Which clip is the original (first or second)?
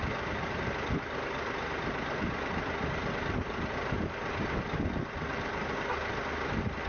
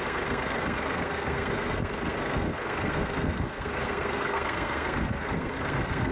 first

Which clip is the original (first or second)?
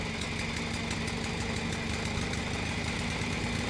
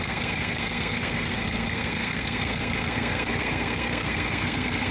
first